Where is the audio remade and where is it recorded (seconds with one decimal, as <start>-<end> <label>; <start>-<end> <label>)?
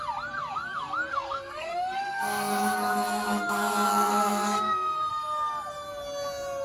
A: 0.0-1.1 recorded; 1.1-5.1 remade; 5.1-6.6 recorded